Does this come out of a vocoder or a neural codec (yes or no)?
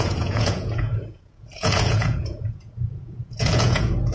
yes